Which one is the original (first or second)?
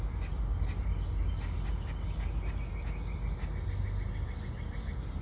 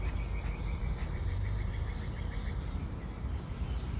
first